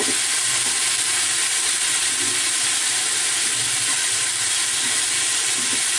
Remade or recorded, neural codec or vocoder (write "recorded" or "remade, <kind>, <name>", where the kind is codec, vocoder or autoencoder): recorded